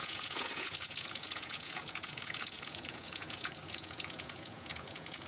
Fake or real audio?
fake